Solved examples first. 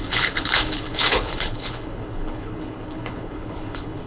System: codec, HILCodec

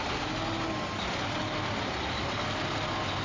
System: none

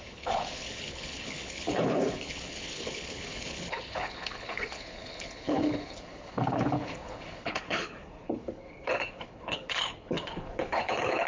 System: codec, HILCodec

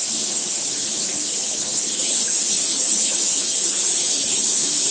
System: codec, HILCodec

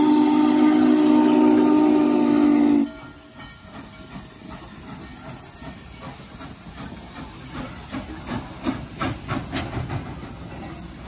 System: none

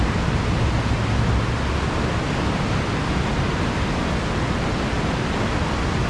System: none